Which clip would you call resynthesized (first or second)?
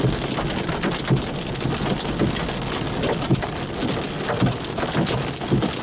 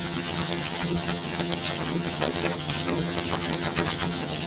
second